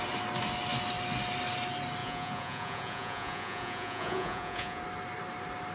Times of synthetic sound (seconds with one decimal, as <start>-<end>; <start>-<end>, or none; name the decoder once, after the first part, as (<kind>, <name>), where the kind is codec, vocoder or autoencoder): 2.0-4.8 (vocoder, Vocos)